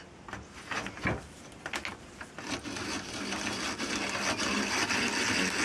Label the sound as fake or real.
real